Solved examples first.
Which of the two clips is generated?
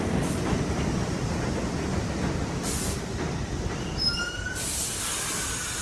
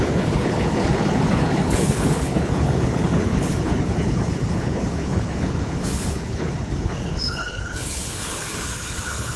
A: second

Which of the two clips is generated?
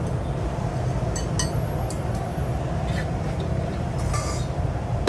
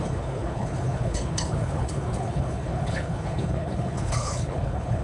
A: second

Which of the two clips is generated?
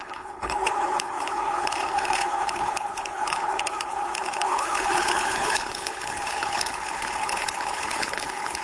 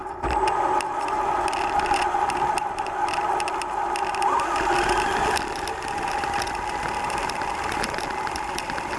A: first